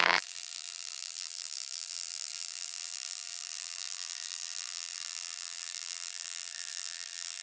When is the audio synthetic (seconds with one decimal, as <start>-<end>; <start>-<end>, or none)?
0.0-7.4